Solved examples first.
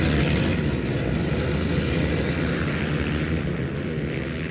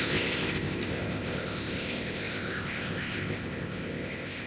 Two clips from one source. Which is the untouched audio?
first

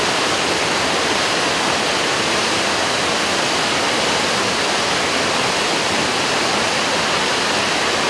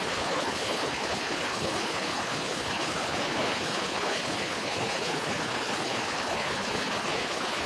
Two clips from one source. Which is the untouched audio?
first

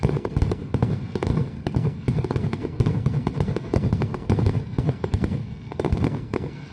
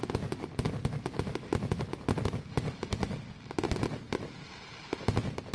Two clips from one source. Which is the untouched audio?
second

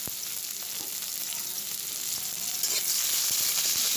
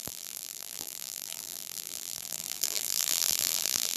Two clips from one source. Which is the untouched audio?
first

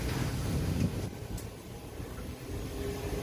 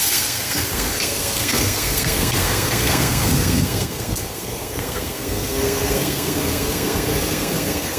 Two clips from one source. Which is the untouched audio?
first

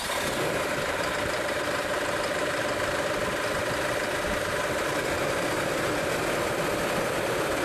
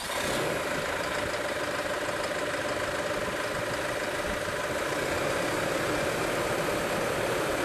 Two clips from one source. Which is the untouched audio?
second